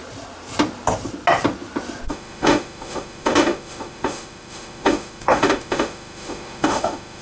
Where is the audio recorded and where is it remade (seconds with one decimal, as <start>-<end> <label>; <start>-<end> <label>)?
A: 0.0-2.1 recorded; 2.1-7.2 remade